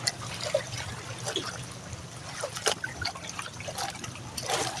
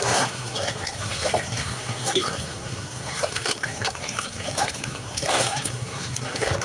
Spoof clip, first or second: second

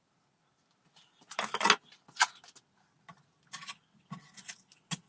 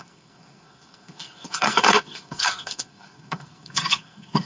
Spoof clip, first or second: second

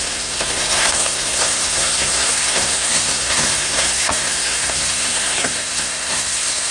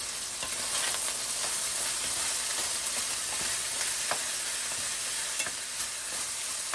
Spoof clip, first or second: first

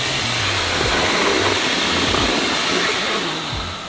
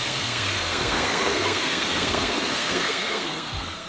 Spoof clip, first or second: second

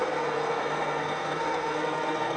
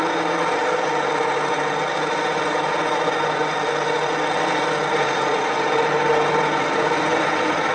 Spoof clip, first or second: first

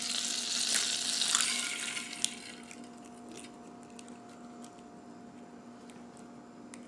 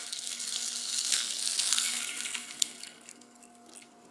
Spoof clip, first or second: second